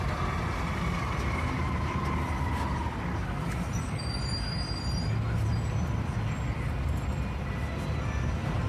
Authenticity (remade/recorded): recorded